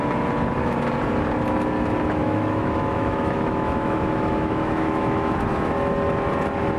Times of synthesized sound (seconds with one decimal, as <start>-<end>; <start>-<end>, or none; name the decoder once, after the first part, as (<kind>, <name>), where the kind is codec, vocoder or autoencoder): 2.2-5.7 (autoencoder, DAC-VAE)